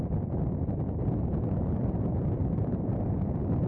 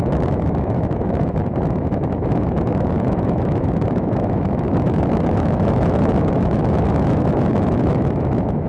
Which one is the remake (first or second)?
second